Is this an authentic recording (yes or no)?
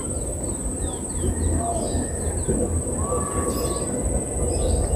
yes